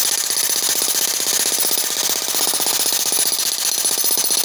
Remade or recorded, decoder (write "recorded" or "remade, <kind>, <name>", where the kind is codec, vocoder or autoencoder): recorded